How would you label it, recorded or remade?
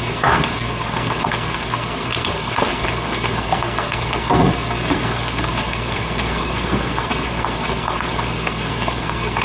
remade